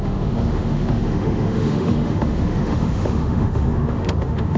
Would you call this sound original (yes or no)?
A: no